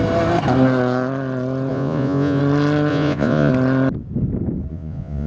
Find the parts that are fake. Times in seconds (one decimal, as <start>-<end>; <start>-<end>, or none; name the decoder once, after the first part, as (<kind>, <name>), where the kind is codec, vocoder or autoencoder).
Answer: 1.7-2.4 (vocoder, Vocos); 2.9-3.5; 4.7-5.3